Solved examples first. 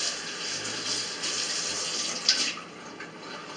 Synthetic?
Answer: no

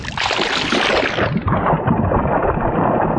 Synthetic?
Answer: no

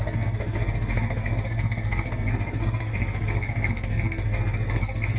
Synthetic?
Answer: yes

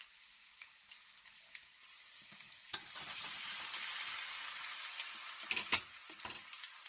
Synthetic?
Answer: no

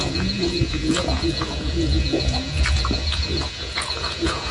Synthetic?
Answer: yes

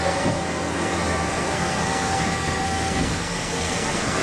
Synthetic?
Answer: yes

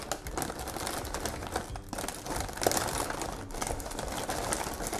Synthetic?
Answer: no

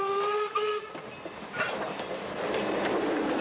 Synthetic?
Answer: no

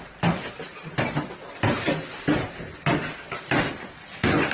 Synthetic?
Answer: no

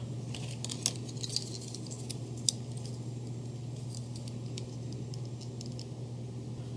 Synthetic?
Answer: no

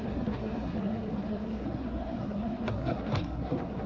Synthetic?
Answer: yes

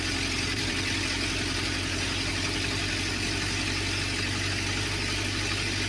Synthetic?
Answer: no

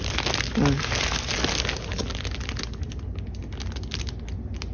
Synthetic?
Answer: no